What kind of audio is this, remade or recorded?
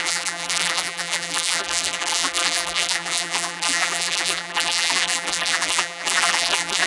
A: remade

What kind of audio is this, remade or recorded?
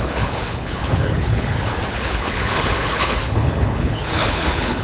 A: remade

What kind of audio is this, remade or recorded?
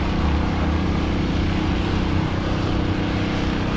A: recorded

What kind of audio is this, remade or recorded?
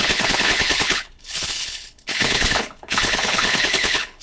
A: remade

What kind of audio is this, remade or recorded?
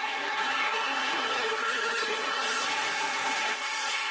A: remade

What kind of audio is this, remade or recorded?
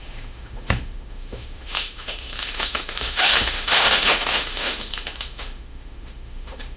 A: remade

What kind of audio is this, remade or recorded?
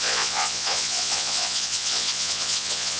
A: remade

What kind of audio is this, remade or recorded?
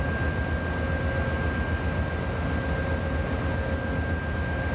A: recorded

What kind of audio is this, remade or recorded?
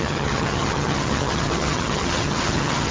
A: remade